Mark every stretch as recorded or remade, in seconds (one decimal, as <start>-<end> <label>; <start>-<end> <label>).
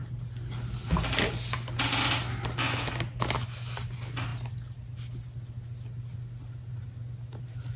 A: 0.0-7.8 recorded